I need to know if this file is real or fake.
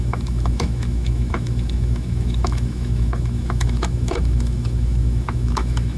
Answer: fake